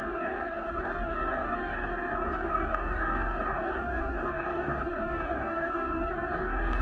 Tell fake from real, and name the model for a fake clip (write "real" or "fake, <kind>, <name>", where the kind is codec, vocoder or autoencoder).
fake, codec, DAC